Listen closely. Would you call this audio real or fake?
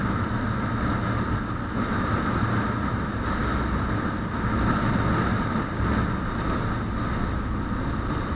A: real